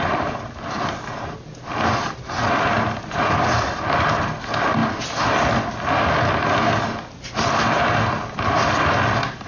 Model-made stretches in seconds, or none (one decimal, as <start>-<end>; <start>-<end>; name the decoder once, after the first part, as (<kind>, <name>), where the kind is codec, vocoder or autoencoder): none